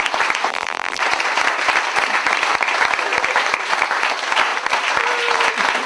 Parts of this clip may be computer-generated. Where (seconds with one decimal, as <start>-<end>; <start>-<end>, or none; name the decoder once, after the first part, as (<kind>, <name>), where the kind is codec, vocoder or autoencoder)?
0.5-1.0 (vocoder, BigVGAN v2)